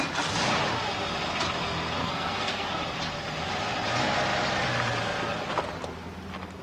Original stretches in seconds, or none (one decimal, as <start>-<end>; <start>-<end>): 0.0-2.0; 2.7-6.6